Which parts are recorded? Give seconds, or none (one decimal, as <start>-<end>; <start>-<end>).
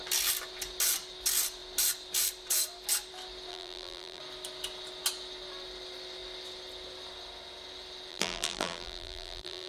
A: 0.0-3.5; 4.2-8.1